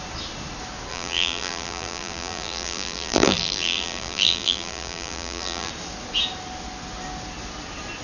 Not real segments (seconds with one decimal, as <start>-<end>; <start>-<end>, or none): 0.9-5.7